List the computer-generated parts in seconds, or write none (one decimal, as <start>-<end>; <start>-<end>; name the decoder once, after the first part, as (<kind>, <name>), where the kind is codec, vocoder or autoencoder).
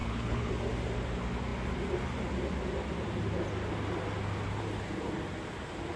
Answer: 0.0-0.5 (codec, HILCodec)